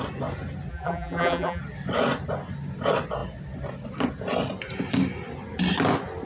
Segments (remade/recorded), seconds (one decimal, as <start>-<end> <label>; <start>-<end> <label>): 0.0-0.7 recorded; 0.7-1.6 remade; 1.6-6.3 recorded